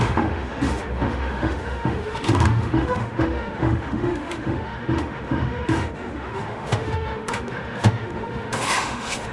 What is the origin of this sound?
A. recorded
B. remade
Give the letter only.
B